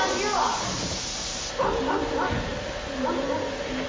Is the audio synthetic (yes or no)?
no